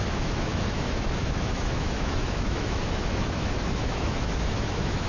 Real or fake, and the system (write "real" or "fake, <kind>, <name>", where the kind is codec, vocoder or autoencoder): fake, autoencoder, DAC-VAE